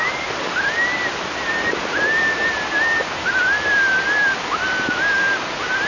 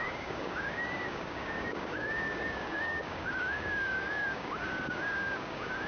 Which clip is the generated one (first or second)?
second